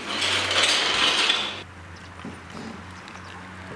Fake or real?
real